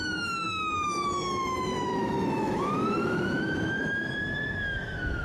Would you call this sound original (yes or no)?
no